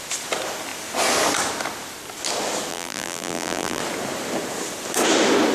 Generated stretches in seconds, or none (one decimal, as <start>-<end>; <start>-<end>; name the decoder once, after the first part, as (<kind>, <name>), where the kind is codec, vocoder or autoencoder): 2.7-3.8 (vocoder, BigVGAN v2)